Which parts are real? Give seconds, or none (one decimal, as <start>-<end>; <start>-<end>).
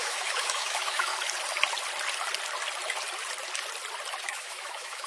1.1-4.2